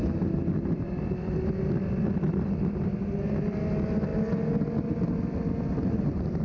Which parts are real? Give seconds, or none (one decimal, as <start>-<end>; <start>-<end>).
0.0-6.4